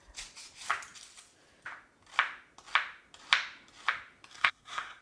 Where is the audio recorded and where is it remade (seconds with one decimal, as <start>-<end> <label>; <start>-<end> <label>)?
0.0-4.3 recorded; 4.3-5.0 remade